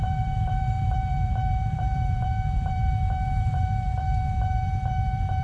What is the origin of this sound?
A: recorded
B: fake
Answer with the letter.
B